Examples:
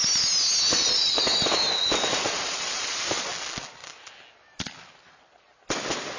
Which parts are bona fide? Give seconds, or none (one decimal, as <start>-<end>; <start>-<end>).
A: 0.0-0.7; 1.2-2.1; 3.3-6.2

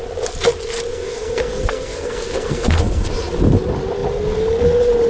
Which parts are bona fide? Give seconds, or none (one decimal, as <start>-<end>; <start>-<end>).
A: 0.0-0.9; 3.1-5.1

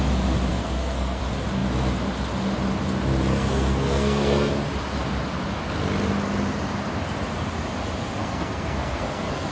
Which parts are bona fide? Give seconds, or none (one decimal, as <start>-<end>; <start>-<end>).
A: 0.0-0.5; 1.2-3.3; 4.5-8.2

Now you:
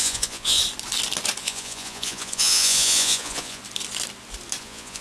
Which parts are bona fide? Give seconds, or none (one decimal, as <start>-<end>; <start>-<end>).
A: 0.6-1.4; 3.6-4.6

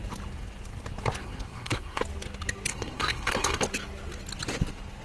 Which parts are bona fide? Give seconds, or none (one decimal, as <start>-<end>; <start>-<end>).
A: 0.0-1.2; 2.0-2.7; 3.6-5.0

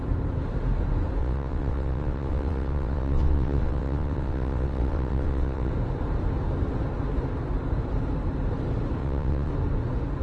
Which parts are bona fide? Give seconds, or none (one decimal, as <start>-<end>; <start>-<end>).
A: 0.0-1.2; 5.7-9.0; 9.5-10.2